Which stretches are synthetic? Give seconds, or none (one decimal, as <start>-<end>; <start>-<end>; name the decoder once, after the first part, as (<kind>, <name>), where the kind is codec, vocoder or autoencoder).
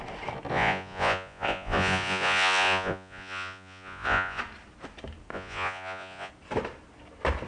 0.5-4.4 (vocoder, Vocos); 5.3-6.3